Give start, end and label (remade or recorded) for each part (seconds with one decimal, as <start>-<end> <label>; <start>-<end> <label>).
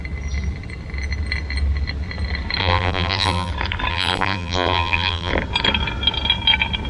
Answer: 0.0-2.6 recorded; 2.6-3.5 remade; 3.5-3.9 recorded; 3.9-5.3 remade; 5.3-6.9 recorded